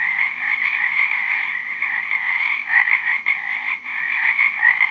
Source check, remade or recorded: remade